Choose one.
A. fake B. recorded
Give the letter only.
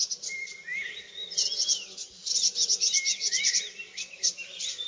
A